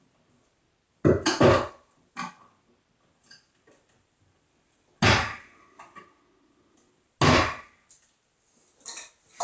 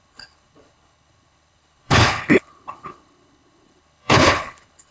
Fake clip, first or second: second